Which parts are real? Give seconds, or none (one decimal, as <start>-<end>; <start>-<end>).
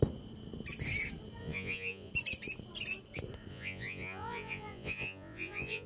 0.0-1.4; 2.1-3.5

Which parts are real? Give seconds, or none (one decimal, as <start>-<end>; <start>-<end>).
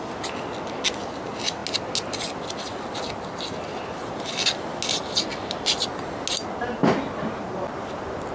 0.0-8.3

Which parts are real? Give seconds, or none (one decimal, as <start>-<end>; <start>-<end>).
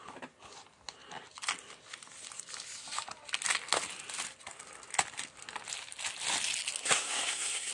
0.0-6.8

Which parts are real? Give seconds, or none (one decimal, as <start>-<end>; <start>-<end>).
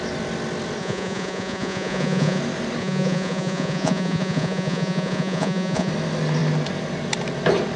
0.0-0.8; 2.4-2.8; 5.9-7.8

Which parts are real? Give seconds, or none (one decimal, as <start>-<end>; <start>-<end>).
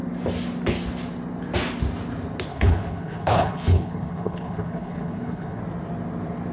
0.0-2.5; 5.6-6.5